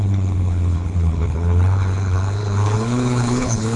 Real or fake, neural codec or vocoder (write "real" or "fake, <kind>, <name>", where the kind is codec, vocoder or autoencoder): fake, codec, HILCodec